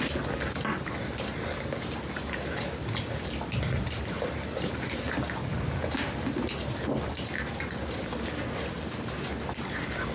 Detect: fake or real real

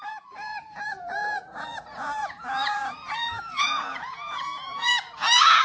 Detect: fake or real fake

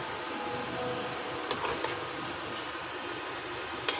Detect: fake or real real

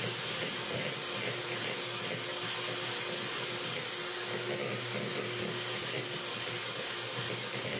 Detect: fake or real real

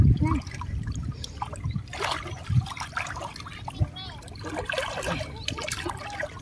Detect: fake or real real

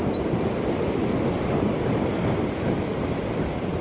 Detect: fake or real real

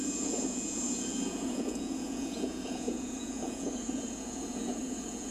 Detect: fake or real fake